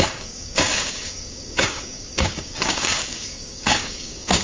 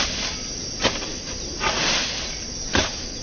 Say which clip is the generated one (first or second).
first